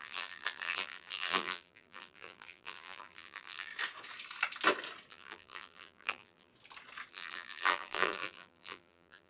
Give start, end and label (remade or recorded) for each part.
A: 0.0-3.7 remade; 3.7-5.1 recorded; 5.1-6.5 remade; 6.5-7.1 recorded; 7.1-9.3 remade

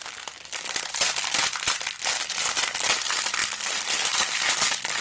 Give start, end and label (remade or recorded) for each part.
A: 0.0-5.0 recorded

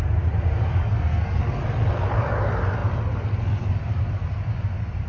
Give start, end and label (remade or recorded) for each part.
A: 0.0-0.8 recorded; 0.8-1.4 remade; 1.4-5.1 recorded

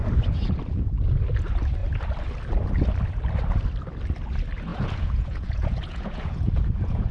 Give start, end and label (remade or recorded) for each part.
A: 0.0-4.7 recorded; 4.7-7.1 remade

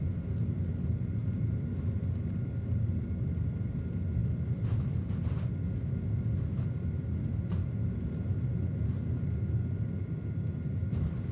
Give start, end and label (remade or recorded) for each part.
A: 0.0-11.3 recorded

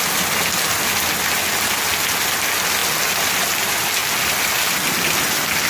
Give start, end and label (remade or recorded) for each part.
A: 0.0-5.7 recorded